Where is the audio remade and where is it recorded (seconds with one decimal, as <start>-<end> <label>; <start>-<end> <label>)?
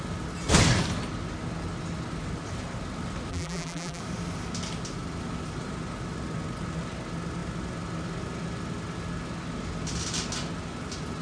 0.0-3.3 recorded; 3.3-4.0 remade; 4.0-11.2 recorded